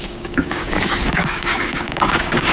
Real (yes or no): no